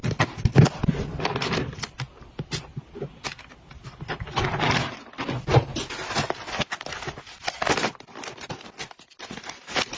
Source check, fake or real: fake